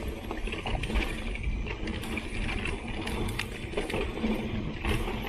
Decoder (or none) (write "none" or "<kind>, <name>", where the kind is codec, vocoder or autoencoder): none